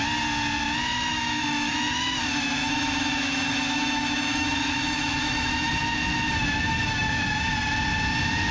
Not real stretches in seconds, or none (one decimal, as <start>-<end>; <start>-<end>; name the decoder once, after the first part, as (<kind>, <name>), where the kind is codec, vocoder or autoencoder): 0.9-2.2 (autoencoder, DAC-VAE); 2.6-5.7; 6.9-7.4